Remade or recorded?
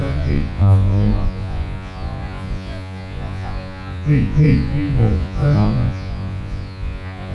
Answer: remade